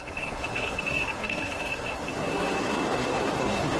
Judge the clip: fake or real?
fake